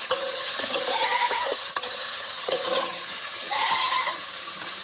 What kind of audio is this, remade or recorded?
remade